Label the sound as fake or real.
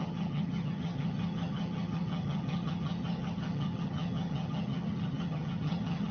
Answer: fake